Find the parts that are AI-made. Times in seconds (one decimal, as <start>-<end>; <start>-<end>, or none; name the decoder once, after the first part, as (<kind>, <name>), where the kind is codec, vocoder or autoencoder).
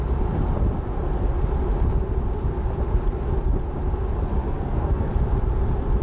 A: 4.3-5.1 (codec, SNAC)